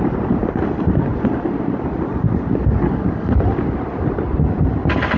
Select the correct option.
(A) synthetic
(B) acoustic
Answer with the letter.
B